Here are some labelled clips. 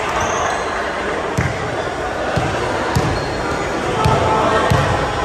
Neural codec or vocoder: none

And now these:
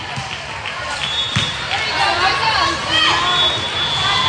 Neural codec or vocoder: none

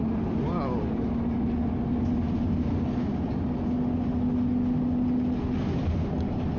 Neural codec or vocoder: none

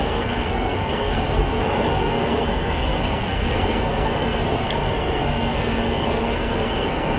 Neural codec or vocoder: codec, SNAC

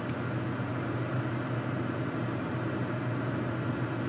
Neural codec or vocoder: none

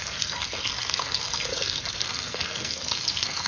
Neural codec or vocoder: codec, SNAC